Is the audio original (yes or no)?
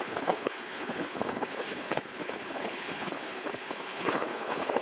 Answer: no